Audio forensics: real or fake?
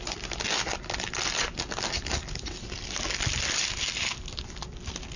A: real